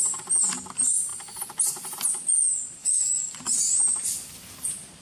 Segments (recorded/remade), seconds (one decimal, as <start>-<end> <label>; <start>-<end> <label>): 0.0-2.8 recorded; 2.8-3.3 remade; 3.3-5.0 recorded